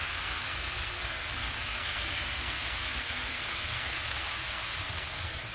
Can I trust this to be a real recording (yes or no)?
no